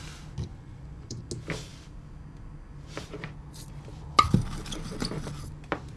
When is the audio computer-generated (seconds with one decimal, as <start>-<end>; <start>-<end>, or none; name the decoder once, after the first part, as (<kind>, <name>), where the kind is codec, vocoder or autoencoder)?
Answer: 0.5-1.2 (vocoder, Vocos)